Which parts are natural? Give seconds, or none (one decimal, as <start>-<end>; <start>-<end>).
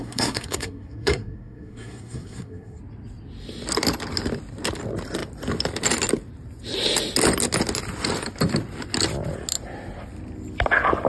2.8-11.1